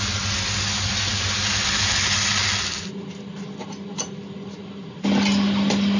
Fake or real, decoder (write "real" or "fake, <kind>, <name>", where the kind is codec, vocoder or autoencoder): real